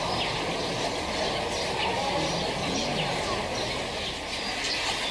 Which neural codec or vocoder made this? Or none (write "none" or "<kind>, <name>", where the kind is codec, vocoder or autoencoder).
none